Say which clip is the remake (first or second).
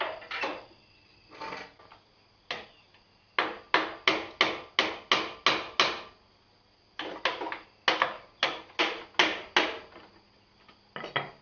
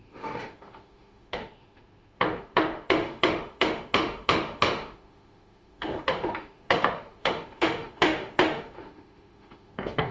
second